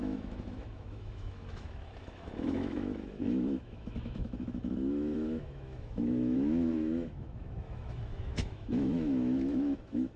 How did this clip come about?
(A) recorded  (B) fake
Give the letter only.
B